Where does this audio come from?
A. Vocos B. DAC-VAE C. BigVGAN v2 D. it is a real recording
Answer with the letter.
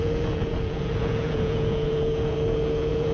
A